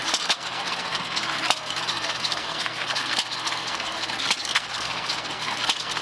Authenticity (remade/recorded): remade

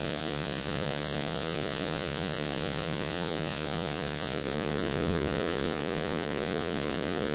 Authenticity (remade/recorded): remade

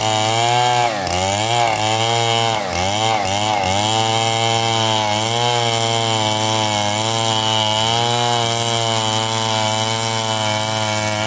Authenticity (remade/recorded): recorded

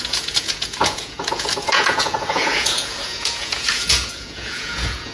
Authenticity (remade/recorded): remade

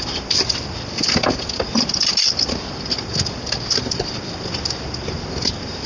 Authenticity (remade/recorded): recorded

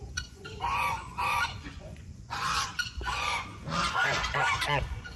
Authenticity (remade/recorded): remade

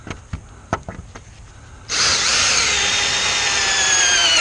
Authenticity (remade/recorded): remade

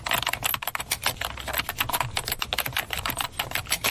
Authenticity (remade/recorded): recorded